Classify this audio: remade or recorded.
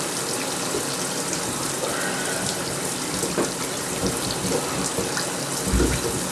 recorded